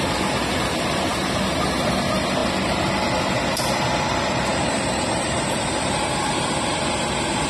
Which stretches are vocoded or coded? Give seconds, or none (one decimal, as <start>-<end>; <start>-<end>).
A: 4.5-6.3